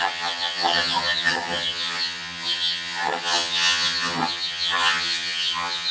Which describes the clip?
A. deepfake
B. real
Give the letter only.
A